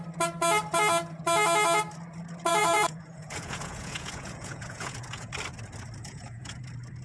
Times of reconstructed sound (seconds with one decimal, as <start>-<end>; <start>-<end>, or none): 2.5-5.3; 6.0-6.6